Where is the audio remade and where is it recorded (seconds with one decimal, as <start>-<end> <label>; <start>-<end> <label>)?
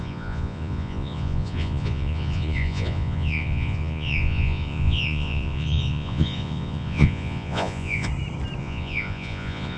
0.0-8.1 remade; 8.1-8.6 recorded; 8.6-9.8 remade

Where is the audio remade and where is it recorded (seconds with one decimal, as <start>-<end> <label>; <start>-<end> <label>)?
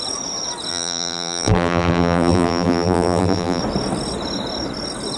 0.0-0.7 recorded; 0.7-3.6 remade; 3.6-5.2 recorded